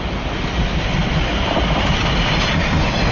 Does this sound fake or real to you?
real